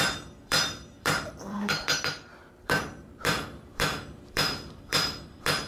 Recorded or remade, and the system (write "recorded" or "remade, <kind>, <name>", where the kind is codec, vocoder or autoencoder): remade, vocoder, BigVGAN v2